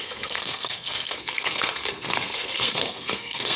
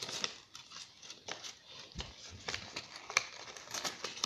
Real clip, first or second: second